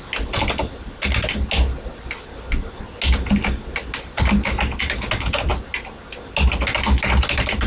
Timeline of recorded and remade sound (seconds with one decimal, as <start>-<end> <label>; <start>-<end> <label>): 0.0-7.7 recorded